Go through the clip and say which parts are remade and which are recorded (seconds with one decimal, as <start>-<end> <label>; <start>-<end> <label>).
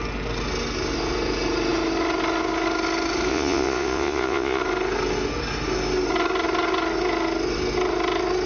0.0-3.3 recorded; 3.3-4.6 remade; 4.6-8.5 recorded